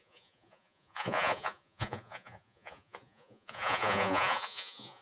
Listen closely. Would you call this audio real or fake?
fake